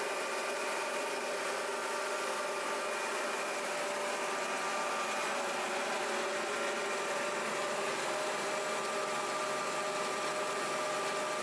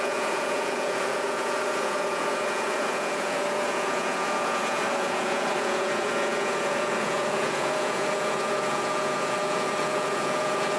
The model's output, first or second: second